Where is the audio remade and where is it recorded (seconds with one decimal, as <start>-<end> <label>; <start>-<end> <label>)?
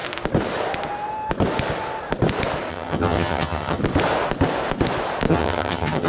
0.0-2.7 recorded; 2.7-3.8 remade; 3.8-5.3 recorded; 5.3-6.1 remade